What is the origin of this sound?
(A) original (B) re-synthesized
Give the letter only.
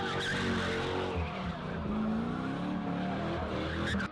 A